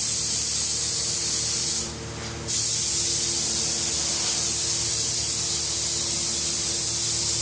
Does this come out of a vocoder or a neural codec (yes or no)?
no